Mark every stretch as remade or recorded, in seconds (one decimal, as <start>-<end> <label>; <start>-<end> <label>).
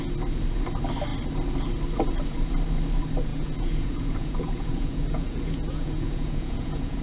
0.0-3.3 recorded; 3.3-7.0 remade